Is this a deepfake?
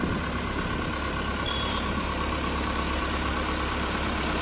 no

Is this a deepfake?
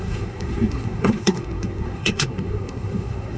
yes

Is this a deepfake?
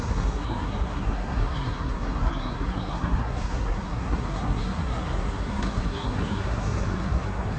yes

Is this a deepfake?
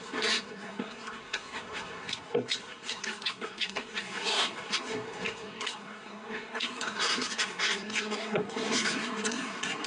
yes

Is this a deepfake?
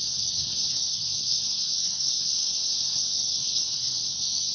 yes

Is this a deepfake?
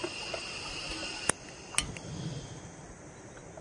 no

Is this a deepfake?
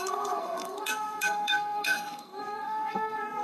yes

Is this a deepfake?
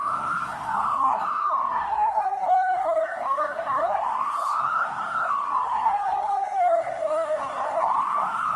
yes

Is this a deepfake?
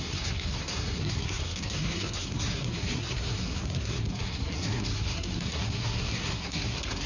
yes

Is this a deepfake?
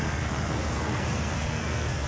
yes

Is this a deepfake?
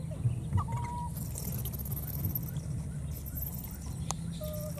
no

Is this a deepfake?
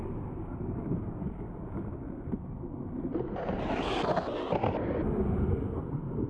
no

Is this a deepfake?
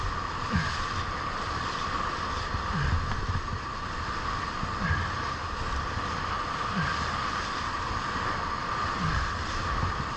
no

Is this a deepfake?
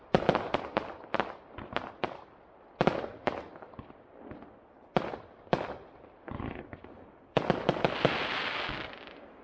no